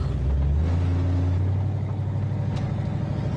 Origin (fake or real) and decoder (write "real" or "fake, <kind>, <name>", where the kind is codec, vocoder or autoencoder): real